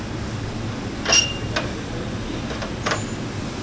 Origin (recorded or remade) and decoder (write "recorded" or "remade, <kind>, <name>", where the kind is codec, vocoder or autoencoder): recorded